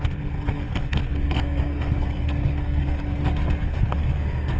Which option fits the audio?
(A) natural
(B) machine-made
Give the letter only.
B